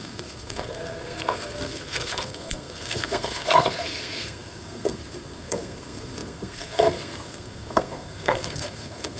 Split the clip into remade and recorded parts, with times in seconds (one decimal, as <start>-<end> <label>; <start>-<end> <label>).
0.0-9.2 remade